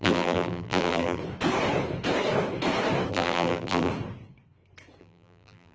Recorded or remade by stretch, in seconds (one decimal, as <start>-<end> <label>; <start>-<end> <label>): 0.0-1.2 remade; 1.2-3.1 recorded; 3.1-3.9 remade; 3.9-5.0 recorded; 5.0-5.7 remade

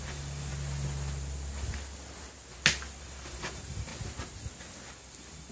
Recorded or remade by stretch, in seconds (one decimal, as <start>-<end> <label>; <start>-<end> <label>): 0.0-0.5 remade; 0.5-3.0 recorded; 3.0-3.9 remade; 3.9-4.9 recorded; 4.9-5.5 remade

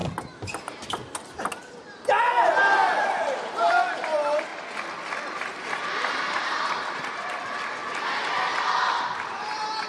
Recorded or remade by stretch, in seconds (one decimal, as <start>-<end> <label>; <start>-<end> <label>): 0.0-0.6 recorded; 0.6-1.0 remade; 1.0-2.6 recorded; 2.6-4.5 remade; 4.5-5.4 recorded; 5.4-7.8 remade; 7.8-8.9 recorded; 8.9-9.9 remade

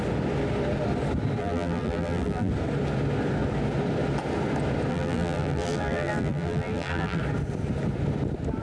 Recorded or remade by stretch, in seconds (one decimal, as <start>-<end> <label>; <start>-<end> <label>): 0.0-1.4 recorded; 1.4-2.5 remade; 2.5-4.9 recorded; 4.9-7.2 remade; 7.2-8.6 recorded

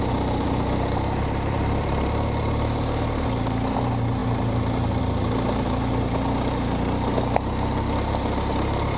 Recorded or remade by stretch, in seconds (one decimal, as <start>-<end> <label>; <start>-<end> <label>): 0.0-9.0 remade

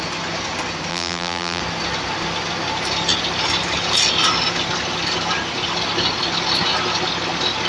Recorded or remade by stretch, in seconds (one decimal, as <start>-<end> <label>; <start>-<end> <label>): 0.0-0.9 recorded; 0.9-1.6 remade; 1.6-7.7 recorded